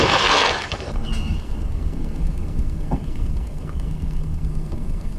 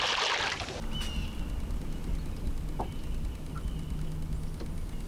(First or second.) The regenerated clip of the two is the first